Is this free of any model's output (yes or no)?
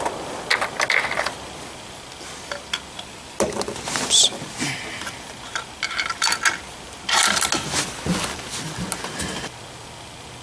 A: yes